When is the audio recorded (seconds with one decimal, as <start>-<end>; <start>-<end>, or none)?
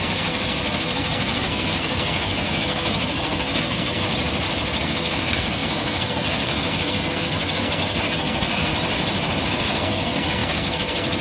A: 4.1-4.8; 8.7-9.5